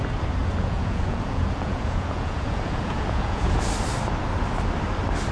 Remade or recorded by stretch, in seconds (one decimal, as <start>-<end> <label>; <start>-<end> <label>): 0.0-0.4 recorded; 0.4-3.6 remade; 3.6-5.3 recorded